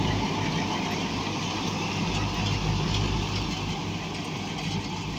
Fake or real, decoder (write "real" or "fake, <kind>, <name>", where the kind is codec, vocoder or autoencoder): real